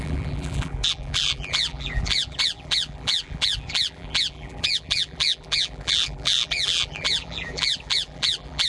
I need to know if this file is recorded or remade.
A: remade